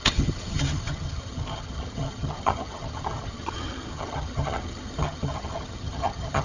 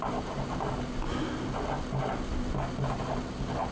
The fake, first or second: first